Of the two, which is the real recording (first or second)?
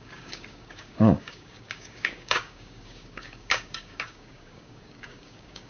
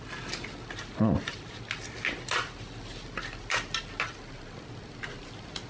second